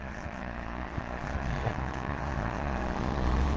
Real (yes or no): no